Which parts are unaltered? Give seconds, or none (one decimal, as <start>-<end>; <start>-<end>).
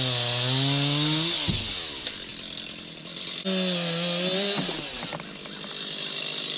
0.0-6.6